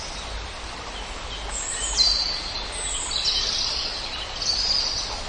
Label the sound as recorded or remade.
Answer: recorded